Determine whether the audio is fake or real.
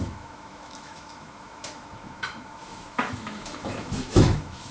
fake